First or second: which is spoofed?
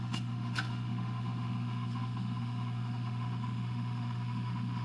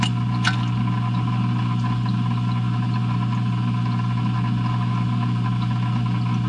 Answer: first